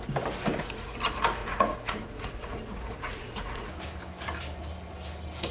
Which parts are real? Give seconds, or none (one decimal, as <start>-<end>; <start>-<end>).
0.0-1.4; 3.7-5.5